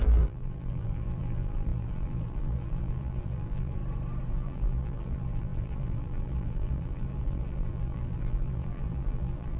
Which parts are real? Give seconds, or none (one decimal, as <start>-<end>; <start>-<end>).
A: 3.8-4.3